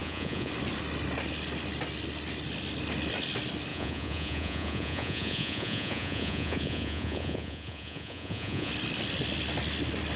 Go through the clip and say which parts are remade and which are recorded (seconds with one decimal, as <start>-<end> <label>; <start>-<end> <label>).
0.0-0.5 remade; 0.5-3.7 recorded; 3.7-8.7 remade; 8.7-10.2 recorded